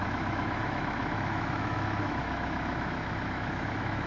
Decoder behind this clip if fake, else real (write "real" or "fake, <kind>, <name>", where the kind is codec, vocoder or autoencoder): fake, autoencoder, DAC-VAE